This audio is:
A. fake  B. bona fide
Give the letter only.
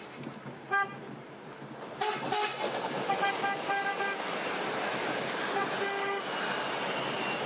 B